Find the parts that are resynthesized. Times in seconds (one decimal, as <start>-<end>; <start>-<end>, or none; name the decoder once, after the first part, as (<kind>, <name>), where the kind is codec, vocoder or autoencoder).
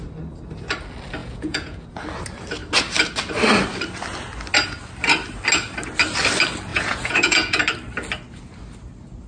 1.2-1.9 (vocoder, Vocos); 6.7-7.6